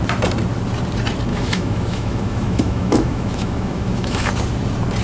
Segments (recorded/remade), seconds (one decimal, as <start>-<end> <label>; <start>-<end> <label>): 0.0-1.3 recorded; 1.3-4.3 remade; 4.3-5.0 recorded